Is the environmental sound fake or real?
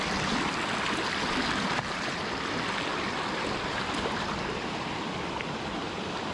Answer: real